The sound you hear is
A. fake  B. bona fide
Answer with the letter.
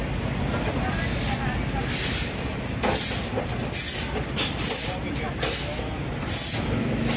B